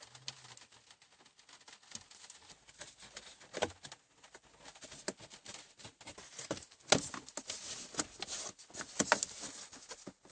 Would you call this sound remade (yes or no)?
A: no